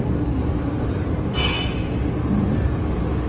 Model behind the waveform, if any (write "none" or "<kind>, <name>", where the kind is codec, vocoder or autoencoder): none